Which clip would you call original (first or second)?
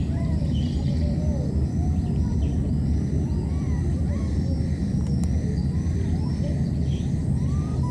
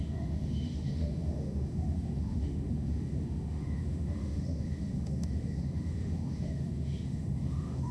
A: first